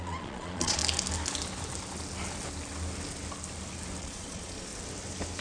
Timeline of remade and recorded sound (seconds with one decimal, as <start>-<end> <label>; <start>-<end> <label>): 0.0-0.8 remade; 0.8-4.0 recorded; 4.0-4.7 remade; 4.7-5.4 recorded